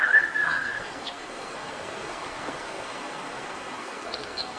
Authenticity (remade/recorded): remade